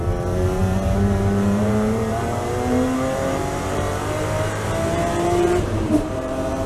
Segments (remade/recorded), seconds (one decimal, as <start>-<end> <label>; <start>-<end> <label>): 0.0-6.7 remade